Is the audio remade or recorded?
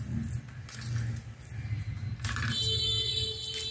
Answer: recorded